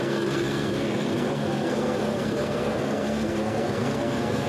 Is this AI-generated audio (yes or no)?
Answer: yes